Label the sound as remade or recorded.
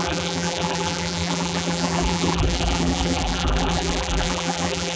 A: remade